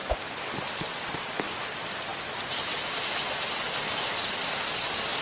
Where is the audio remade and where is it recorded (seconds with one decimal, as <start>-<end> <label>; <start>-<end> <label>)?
0.0-5.2 recorded